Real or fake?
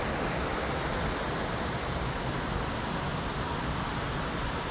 real